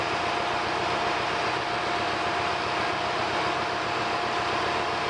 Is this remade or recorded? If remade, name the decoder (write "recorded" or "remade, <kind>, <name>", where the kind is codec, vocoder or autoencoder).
recorded